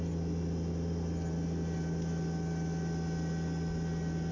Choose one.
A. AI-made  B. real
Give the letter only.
B